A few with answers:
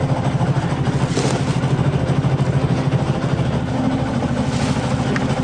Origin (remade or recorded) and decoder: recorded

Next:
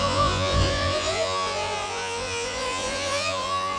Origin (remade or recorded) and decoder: remade, vocoder, Vocos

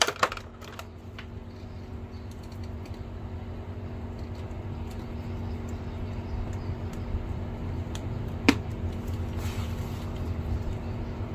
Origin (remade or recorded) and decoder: recorded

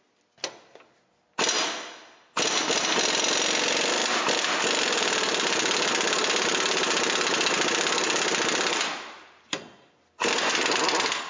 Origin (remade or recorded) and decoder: recorded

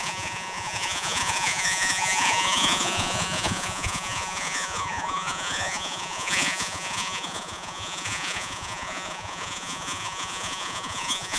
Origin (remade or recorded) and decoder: remade, vocoder, Vocos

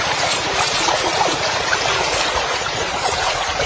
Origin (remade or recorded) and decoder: remade, vocoder, Vocos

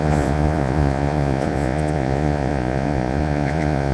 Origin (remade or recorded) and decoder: remade, vocoder, Vocos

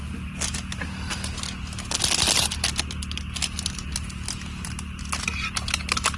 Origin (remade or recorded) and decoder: recorded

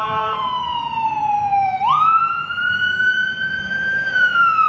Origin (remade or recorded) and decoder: remade, vocoder, Vocos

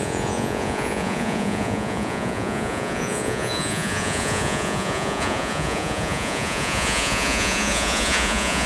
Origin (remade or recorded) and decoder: remade, vocoder, Vocos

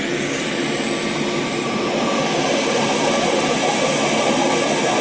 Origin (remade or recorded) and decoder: recorded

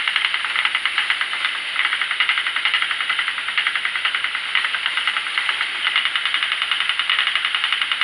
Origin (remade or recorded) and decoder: recorded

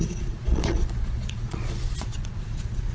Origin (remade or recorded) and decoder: remade, vocoder, Vocos